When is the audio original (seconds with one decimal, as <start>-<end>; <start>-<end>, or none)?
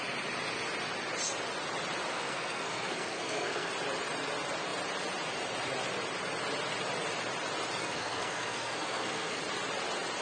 0.0-2.1; 3.7-7.8; 9.4-10.2